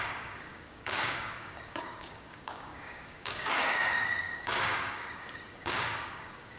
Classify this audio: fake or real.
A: fake